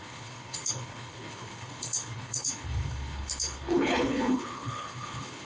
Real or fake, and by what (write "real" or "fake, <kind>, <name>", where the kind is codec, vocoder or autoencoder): fake, codec, HILCodec